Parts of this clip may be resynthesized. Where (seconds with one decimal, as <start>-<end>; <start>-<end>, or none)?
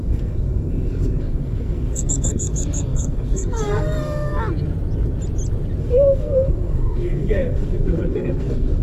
0.0-4.3; 5.8-8.8